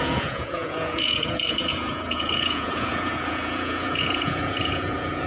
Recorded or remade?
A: remade